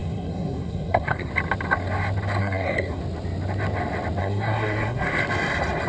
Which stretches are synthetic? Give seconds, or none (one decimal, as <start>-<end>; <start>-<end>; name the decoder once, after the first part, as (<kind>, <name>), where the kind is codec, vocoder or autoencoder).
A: 0.0-1.3 (codec, SNAC); 2.4-3.0; 4.2-5.2